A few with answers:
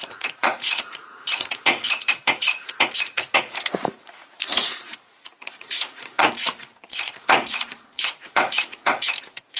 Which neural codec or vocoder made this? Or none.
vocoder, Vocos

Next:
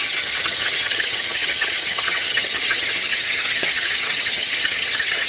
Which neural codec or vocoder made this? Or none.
vocoder, HiFi-GAN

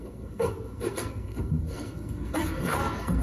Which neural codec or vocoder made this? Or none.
codec, SNAC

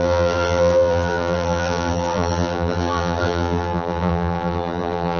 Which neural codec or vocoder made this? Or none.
vocoder, BigVGAN v2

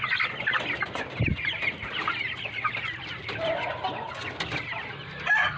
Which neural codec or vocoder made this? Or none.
none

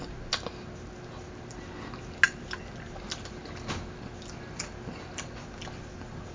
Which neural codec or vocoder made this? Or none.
none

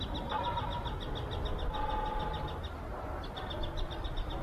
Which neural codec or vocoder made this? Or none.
none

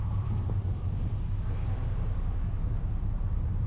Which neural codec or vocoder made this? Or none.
vocoder, BigVGAN v2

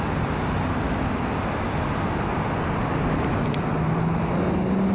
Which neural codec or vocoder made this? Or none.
none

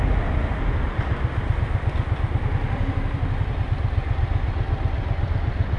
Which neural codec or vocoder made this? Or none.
none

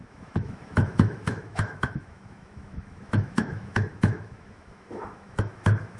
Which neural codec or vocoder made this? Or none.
autoencoder, DAC-VAE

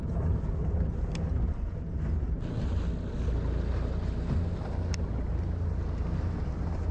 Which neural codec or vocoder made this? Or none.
none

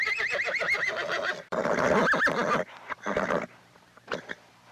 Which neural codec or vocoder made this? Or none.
vocoder, BigVGAN v2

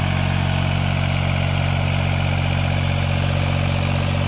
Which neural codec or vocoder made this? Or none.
none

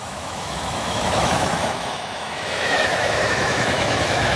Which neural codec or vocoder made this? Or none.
autoencoder, DAC-VAE